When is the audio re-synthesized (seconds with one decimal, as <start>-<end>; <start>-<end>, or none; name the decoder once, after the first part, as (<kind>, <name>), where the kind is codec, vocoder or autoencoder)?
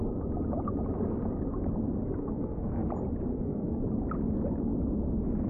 2.2-2.9 (codec, SNAC); 3.3-3.8